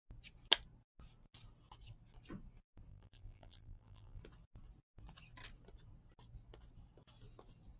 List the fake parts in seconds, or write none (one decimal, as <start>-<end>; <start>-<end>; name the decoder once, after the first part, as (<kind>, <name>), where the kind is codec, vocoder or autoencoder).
2.9-4.2 (vocoder, BigVGAN v2)